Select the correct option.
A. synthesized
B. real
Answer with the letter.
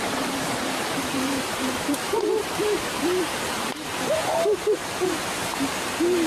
A